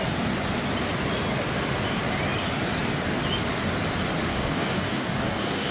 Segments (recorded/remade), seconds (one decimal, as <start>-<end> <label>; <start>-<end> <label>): 0.0-4.3 recorded; 4.3-5.7 remade